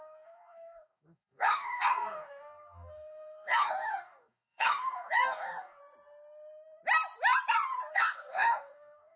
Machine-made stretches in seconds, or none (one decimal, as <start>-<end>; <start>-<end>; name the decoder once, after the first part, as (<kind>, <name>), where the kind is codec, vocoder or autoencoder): 0.0-5.8 (codec, DAC); 7.9-9.2